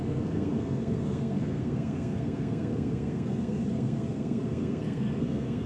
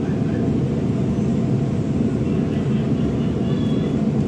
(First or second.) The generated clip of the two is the first